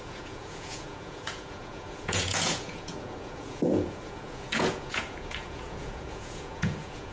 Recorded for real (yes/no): no